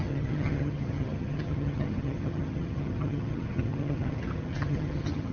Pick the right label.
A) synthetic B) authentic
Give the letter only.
A